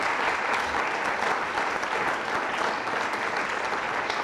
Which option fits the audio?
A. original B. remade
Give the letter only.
A